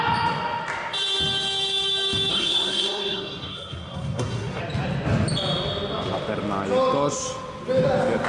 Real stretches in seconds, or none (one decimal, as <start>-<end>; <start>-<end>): 0.0-2.3; 4.6-8.3